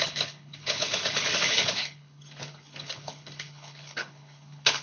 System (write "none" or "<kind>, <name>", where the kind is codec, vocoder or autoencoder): codec, HILCodec